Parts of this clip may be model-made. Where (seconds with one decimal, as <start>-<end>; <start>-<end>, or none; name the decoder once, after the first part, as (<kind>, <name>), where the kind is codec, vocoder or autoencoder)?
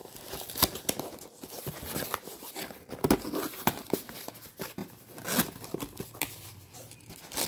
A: none